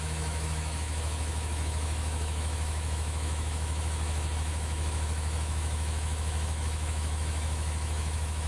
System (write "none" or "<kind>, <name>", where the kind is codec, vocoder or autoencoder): autoencoder, DAC-VAE